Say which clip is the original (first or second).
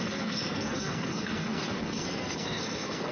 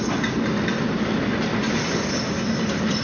second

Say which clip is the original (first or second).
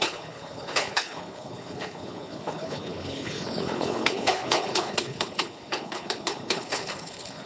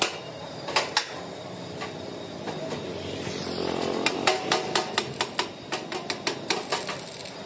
second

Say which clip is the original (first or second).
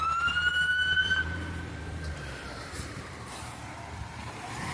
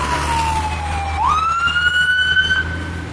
second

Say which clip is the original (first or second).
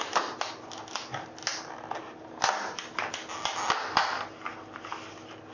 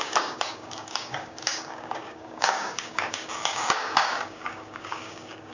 first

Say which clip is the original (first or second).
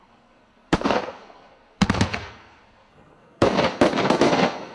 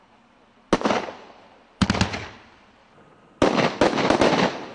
second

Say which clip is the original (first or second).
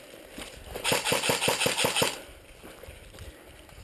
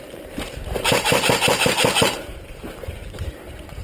first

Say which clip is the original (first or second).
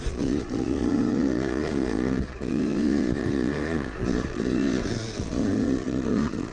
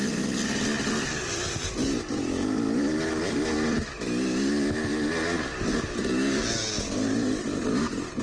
second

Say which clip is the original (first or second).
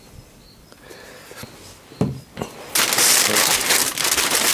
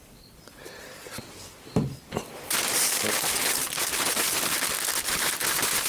first